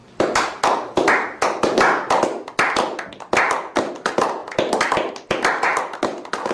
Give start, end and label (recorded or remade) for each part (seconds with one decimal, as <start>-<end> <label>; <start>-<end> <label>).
0.0-6.5 recorded